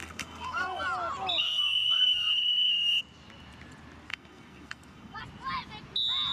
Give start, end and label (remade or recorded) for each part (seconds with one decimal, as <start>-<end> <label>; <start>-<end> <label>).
0.0-0.8 remade; 0.8-1.4 recorded; 1.4-3.0 remade; 3.0-4.1 recorded; 4.1-5.2 remade; 5.2-6.3 recorded